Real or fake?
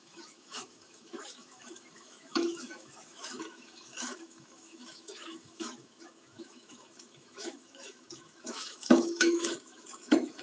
fake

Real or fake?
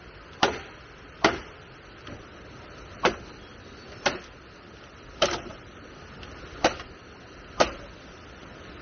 real